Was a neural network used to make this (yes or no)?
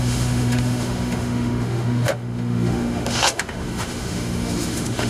yes